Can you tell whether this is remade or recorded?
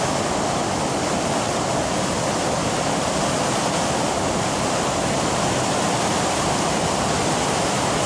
remade